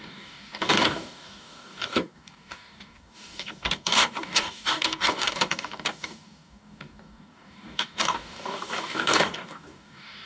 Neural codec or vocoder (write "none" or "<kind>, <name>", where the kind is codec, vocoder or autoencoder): codec, DAC